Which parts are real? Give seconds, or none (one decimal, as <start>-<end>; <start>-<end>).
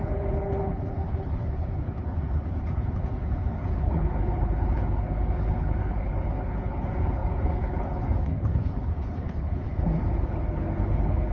none